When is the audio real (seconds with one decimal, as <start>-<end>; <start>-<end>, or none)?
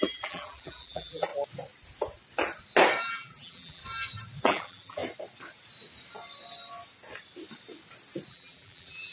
1.3-3.0; 3.8-4.4; 5.0-8.3